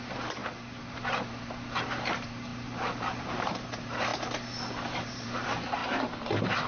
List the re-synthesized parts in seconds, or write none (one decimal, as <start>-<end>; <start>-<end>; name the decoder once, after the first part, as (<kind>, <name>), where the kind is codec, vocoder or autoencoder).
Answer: 0.0-4.1 (vocoder, BigVGAN v2); 4.9-6.7